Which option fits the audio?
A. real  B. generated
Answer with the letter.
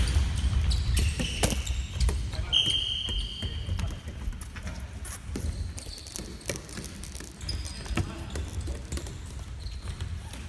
A